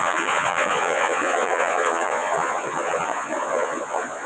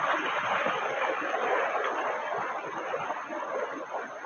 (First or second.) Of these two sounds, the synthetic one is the first